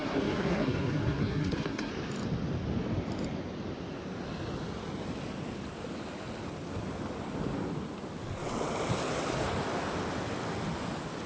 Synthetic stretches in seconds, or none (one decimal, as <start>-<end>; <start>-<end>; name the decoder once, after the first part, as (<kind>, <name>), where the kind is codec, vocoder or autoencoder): 0.0-1.9 (codec, SNAC)